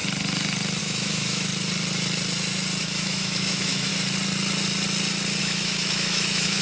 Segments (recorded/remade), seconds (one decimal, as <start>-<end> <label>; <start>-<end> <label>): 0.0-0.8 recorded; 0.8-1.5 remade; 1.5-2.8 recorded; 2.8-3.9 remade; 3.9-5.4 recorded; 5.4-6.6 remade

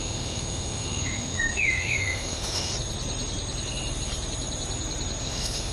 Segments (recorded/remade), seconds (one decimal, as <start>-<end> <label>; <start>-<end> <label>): 0.0-2.7 remade; 2.7-5.2 recorded; 5.2-5.7 remade

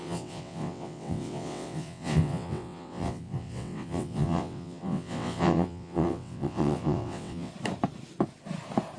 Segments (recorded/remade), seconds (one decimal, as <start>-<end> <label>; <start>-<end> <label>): 0.0-7.5 remade; 7.5-9.0 recorded

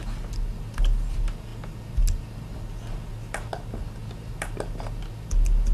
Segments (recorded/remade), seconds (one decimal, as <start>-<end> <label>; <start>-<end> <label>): 0.0-5.7 recorded

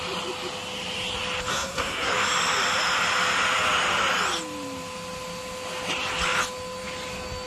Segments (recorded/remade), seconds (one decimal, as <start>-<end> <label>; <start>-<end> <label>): 0.0-1.5 recorded; 1.5-2.1 remade; 2.1-7.5 recorded

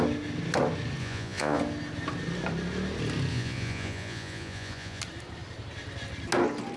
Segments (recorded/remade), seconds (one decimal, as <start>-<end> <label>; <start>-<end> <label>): 0.0-1.0 recorded; 1.0-1.6 remade; 1.6-3.3 recorded; 3.3-5.0 remade; 5.0-6.8 recorded

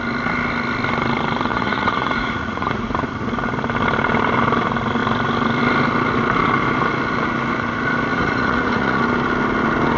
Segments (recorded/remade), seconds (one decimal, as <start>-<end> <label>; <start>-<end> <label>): 0.0-1.5 recorded; 1.5-2.8 remade; 2.8-8.1 recorded; 8.1-9.0 remade; 9.0-10.0 recorded

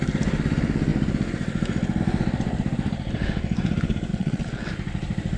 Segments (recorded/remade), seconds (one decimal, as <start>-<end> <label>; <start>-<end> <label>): 0.0-4.1 recorded; 4.1-4.7 remade; 4.7-5.4 recorded